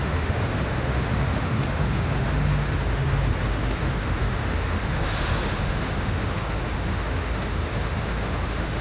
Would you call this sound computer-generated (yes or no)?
yes